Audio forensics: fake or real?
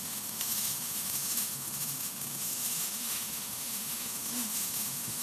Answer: fake